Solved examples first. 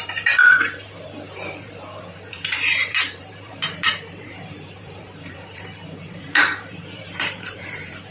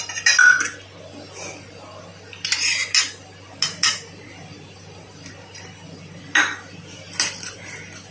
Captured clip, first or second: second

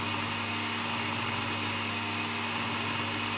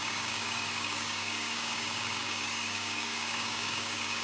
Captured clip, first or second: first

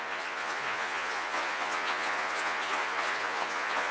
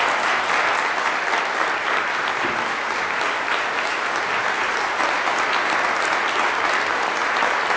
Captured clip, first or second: second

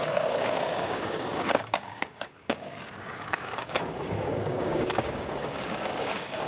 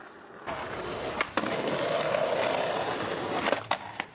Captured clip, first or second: second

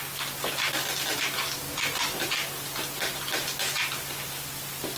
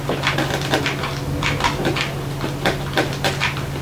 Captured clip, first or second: first